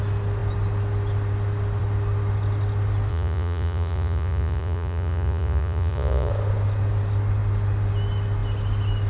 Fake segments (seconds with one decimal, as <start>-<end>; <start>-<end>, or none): 3.1-6.3